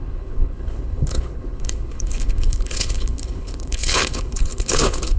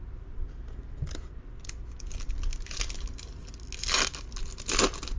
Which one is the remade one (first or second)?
first